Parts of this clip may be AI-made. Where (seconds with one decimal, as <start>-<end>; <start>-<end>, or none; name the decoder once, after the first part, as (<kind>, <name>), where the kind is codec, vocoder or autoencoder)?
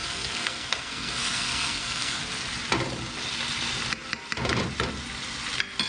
0.0-2.2 (codec, SNAC)